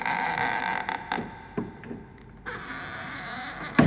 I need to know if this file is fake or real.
real